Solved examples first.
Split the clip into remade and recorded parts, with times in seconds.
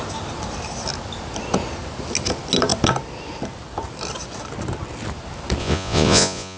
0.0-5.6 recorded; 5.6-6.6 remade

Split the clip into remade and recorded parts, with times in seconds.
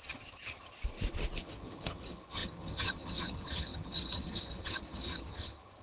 0.0-0.7 remade; 0.7-1.4 recorded; 1.4-5.8 remade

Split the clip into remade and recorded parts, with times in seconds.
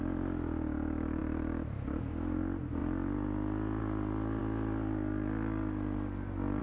0.0-6.6 recorded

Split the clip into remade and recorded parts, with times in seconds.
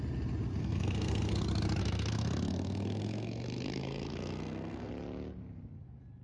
0.0-0.6 recorded; 0.6-1.4 remade; 1.4-1.8 recorded; 1.8-4.9 remade; 4.9-6.2 recorded